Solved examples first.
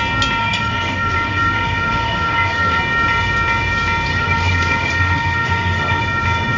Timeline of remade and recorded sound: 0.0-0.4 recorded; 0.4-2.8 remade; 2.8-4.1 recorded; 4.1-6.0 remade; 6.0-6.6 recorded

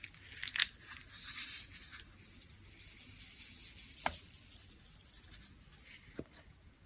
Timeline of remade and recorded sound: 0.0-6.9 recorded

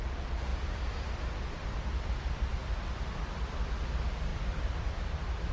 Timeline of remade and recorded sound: 0.0-0.5 recorded; 0.5-3.8 remade; 3.8-4.3 recorded; 4.3-5.5 remade